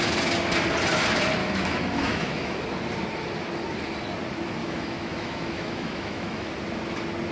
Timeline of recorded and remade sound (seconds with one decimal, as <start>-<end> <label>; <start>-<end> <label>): 0.0-1.4 recorded; 1.4-2.6 remade; 2.6-4.6 recorded; 4.6-6.5 remade; 6.5-7.3 recorded